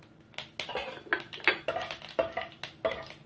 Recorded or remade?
recorded